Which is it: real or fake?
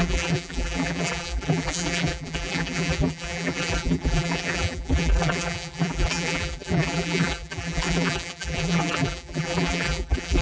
fake